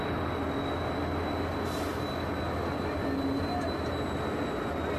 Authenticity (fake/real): real